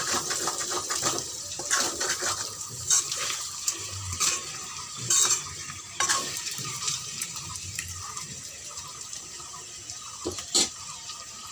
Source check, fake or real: fake